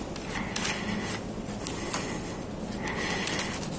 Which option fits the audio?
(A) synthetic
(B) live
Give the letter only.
B